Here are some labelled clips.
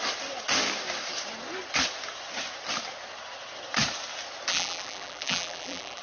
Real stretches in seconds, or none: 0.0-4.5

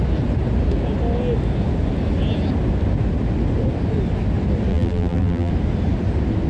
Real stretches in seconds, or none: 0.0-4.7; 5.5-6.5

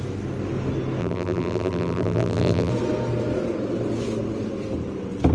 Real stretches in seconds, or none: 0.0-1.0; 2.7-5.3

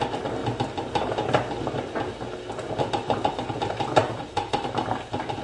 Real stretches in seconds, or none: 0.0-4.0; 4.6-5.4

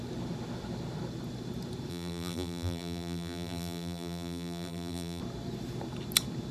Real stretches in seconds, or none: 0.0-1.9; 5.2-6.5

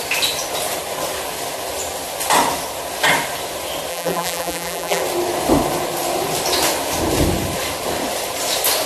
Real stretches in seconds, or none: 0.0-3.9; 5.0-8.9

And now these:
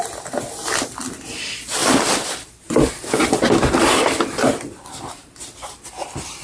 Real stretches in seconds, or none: none

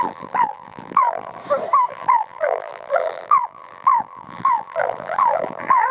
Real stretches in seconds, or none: 1.4-1.9